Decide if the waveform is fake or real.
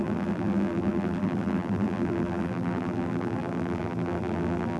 fake